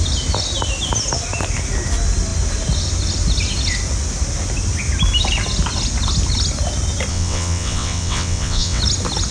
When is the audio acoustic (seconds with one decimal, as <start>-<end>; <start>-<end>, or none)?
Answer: 0.0-7.1; 8.8-9.3